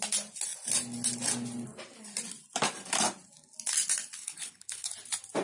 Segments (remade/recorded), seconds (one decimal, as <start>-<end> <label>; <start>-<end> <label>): 0.0-4.2 recorded; 4.2-4.9 remade; 4.9-5.4 recorded